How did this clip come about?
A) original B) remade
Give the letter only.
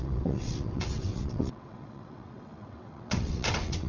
B